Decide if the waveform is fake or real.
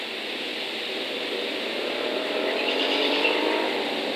fake